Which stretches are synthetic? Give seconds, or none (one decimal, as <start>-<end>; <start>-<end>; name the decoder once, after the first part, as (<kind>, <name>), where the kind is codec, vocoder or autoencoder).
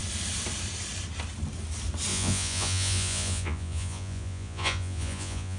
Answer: 2.1-5.6 (vocoder, Vocos)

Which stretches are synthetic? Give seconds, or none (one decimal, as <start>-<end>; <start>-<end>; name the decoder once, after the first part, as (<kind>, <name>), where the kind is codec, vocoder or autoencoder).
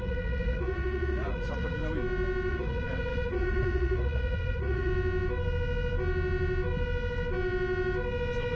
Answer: 0.0-1.8 (vocoder, Vocos); 2.5-4.9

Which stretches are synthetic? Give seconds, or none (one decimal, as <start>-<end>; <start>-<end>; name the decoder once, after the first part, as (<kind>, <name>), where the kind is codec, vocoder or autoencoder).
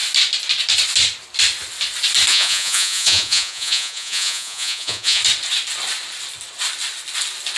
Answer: 2.3-5.2 (vocoder, Vocos)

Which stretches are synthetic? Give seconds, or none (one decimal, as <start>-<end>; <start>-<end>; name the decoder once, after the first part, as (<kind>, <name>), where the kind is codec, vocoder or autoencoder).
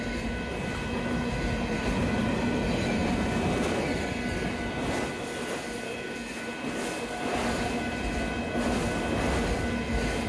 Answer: none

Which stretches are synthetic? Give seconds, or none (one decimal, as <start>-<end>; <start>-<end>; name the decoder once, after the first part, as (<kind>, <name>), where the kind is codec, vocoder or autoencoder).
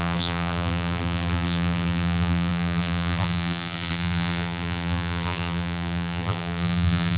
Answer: 0.0-7.2 (vocoder, BigVGAN v2)